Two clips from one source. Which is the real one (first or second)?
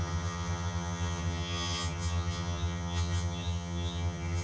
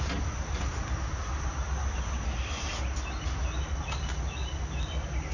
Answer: second